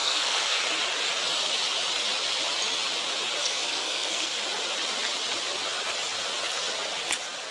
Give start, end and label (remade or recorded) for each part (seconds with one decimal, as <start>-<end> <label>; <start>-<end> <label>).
0.0-0.6 remade; 0.6-3.4 recorded; 3.4-4.4 remade; 4.4-7.5 recorded